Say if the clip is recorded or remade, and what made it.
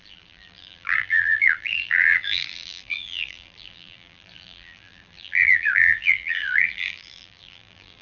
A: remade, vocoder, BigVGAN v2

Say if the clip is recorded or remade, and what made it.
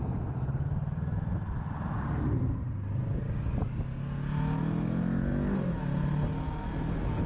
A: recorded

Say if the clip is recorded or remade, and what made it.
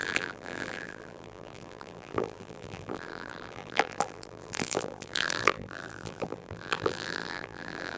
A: remade, vocoder, BigVGAN v2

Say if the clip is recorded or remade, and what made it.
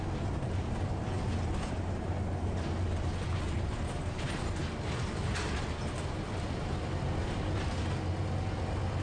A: recorded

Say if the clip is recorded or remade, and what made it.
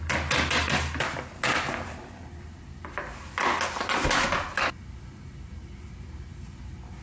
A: recorded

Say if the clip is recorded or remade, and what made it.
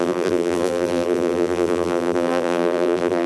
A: remade, vocoder, BigVGAN v2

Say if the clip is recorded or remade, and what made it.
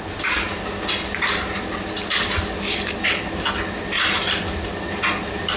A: recorded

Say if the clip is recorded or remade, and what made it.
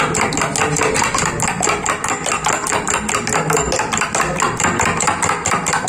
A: recorded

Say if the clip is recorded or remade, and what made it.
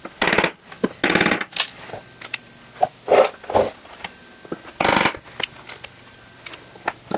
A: recorded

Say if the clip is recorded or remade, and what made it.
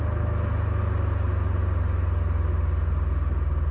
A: recorded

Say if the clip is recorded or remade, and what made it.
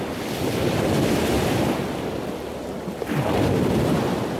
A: recorded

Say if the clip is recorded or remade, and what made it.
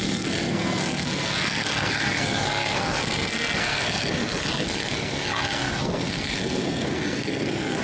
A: remade, codec, SNAC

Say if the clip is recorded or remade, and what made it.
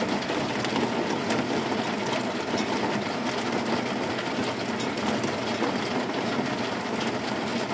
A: recorded